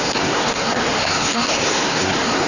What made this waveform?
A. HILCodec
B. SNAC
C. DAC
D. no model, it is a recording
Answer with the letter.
B